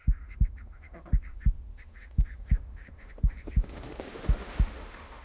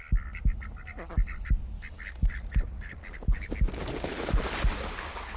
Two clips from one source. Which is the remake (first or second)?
first